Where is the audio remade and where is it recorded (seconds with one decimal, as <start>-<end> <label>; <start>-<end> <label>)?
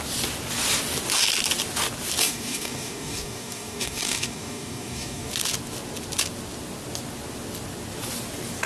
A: 0.0-2.2 recorded; 2.2-5.3 remade; 5.3-8.7 recorded